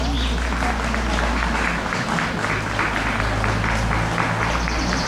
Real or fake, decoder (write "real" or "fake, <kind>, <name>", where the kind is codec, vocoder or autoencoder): real